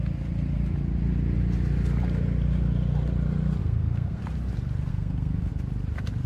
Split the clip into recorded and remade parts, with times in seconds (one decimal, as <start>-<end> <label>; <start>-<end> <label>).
0.0-3.6 recorded; 3.6-4.2 remade; 4.2-4.9 recorded; 4.9-5.5 remade; 5.5-6.3 recorded

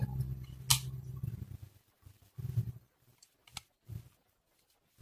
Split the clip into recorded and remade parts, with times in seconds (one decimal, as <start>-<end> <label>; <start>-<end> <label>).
0.0-5.0 recorded

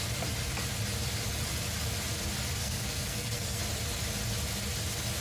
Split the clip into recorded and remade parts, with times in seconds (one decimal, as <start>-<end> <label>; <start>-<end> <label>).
0.0-2.6 recorded; 2.6-3.6 remade; 3.6-5.2 recorded

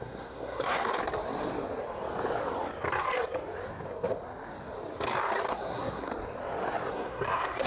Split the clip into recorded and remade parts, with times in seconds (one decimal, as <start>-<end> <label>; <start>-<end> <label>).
0.0-0.9 remade; 0.9-5.5 recorded; 5.5-6.1 remade; 6.1-6.9 recorded; 6.9-7.7 remade

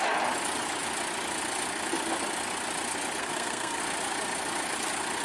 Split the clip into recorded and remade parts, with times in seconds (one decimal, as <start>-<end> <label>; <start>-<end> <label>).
0.0-3.2 recorded; 3.2-3.8 remade; 3.8-5.2 recorded